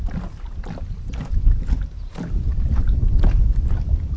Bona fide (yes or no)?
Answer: yes